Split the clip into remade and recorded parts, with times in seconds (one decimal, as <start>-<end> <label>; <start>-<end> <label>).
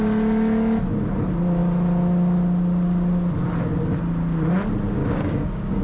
0.0-5.0 recorded; 5.0-5.8 remade